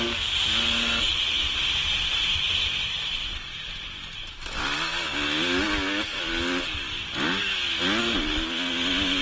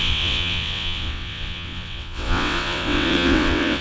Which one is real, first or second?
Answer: first